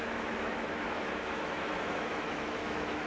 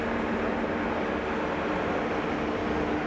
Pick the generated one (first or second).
first